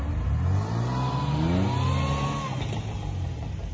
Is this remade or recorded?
recorded